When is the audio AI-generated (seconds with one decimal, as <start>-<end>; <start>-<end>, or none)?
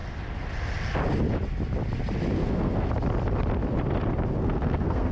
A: 2.4-2.9; 4.4-5.1